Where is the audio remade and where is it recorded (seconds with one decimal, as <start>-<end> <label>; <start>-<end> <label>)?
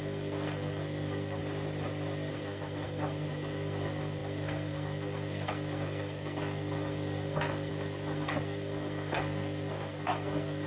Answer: 0.0-1.4 remade; 1.4-2.3 recorded; 2.3-10.7 remade